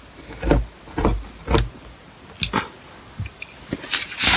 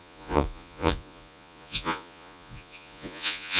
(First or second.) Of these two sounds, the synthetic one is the second